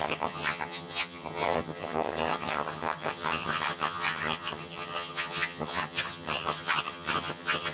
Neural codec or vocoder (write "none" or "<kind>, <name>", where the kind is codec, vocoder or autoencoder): vocoder, HiFi-GAN